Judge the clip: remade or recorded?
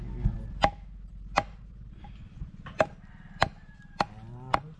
recorded